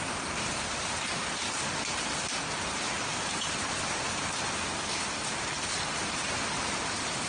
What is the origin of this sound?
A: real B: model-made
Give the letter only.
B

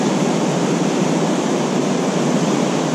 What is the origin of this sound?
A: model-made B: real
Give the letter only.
B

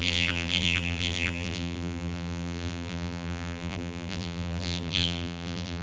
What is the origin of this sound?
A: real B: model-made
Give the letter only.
B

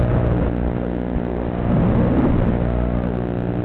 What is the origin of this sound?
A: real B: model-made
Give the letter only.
A